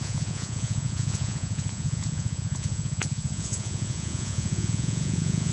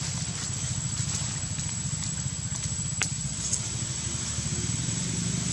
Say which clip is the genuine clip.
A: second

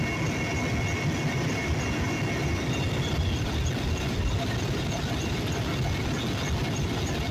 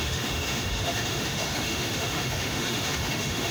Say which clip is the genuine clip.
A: first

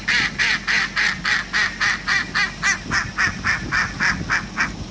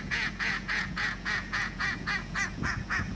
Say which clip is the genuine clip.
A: first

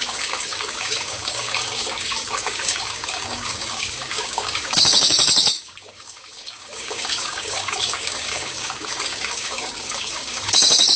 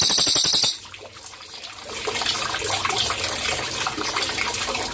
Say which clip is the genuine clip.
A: second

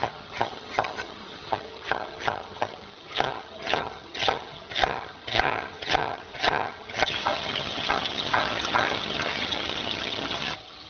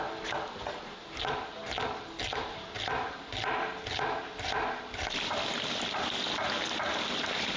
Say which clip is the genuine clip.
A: second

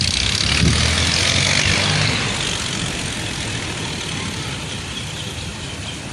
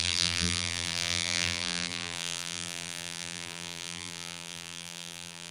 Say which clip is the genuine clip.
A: first